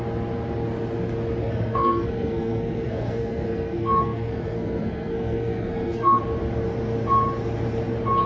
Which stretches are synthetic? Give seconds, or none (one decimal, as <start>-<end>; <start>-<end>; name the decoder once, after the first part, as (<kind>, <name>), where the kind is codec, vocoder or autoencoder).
1.4-6.2 (codec, SNAC)